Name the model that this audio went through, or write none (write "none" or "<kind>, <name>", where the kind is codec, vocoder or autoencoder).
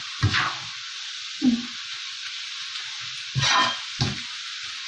none